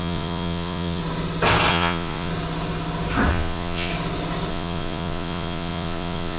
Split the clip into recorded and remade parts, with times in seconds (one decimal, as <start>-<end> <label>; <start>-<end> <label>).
0.0-1.0 remade; 1.0-1.7 recorded; 1.7-2.3 remade; 2.3-3.3 recorded; 3.3-3.9 remade; 3.9-4.5 recorded; 4.5-6.4 remade